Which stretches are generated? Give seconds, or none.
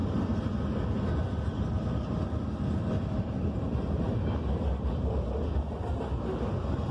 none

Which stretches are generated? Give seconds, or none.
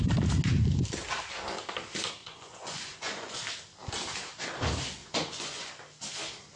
2.2-3.4 (vocoder, Vocos); 5.0-5.7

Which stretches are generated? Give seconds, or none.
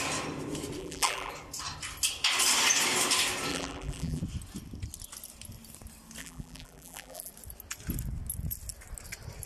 0.8-1.3 (vocoder, BigVGAN v2); 3.5-4.2; 6.2-7.3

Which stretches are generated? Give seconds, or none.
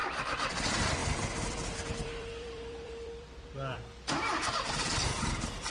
0.5-5.7 (vocoder, BigVGAN v2)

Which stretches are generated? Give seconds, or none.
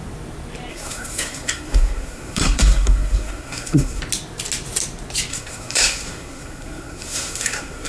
0.7-4.0 (codec, SNAC); 5.3-7.9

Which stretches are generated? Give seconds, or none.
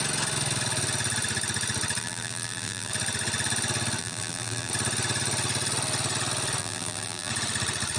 2.0-2.9 (vocoder, BigVGAN v2); 4.0-4.7; 6.6-7.3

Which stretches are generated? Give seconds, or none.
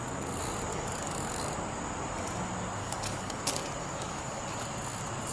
0.7-1.5 (codec, DAC); 2.8-3.4; 3.8-4.4